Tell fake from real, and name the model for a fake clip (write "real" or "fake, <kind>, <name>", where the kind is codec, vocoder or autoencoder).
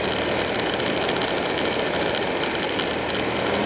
real